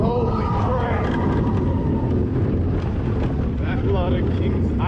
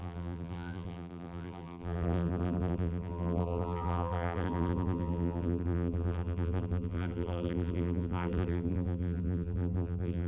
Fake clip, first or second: second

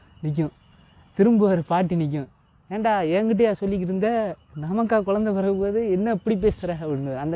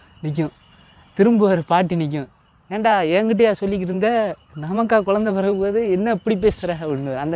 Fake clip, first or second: second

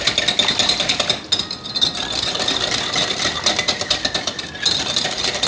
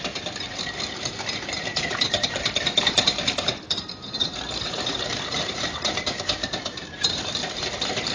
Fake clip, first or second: second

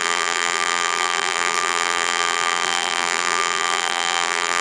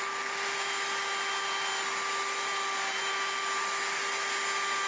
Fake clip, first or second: first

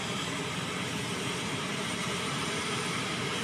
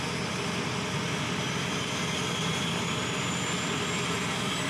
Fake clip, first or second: first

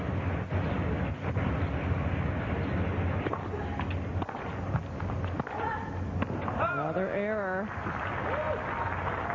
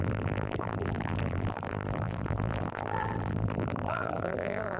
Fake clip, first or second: second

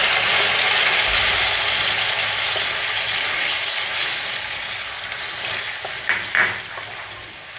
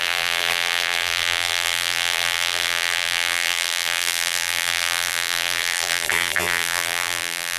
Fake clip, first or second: second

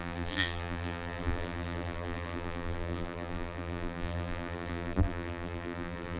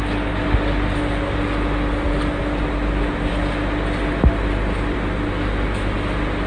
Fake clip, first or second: first